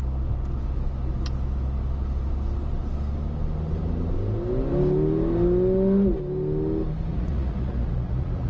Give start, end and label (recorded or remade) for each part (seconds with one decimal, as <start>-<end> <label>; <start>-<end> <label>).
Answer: 0.0-7.1 recorded; 7.1-8.5 remade